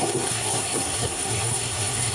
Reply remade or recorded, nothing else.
remade